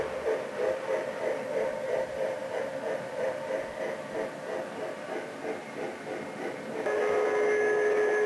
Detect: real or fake real